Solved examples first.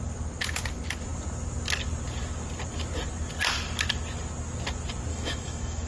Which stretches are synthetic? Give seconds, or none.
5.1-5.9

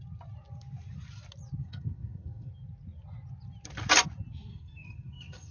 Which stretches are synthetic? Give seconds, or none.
1.6-2.5; 4.5-5.5